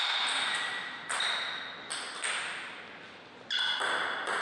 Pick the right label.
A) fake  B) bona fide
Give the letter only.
B